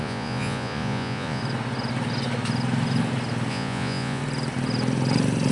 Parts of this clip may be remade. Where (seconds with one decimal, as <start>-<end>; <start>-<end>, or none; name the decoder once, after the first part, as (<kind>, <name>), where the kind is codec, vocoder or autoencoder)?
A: 0.0-1.4 (vocoder, Vocos); 3.5-4.2